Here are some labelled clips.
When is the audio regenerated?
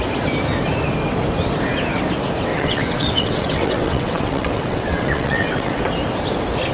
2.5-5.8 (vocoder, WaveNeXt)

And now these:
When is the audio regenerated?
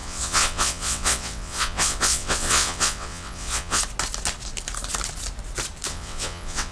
0.0-3.8 (vocoder, WaveNeXt); 5.9-6.7